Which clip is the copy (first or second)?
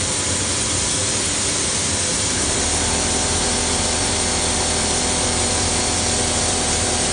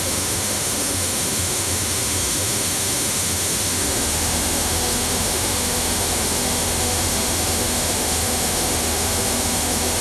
second